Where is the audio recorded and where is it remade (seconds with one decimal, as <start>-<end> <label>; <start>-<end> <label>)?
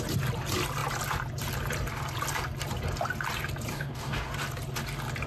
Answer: 0.0-3.7 recorded; 3.7-4.3 remade; 4.3-5.3 recorded